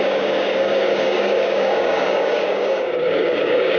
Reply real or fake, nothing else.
fake